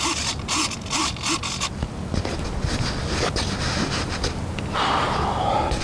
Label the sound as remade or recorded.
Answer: recorded